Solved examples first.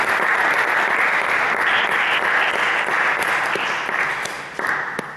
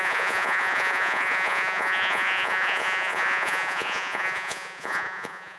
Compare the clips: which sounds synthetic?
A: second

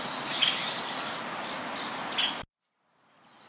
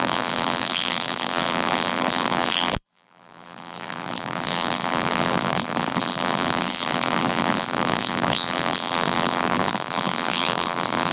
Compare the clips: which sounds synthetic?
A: second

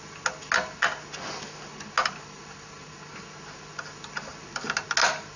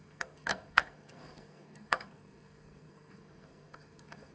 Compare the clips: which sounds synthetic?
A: second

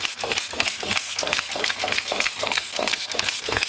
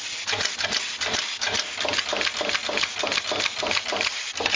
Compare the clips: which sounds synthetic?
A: first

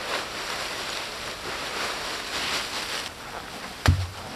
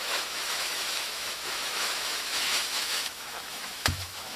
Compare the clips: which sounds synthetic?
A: second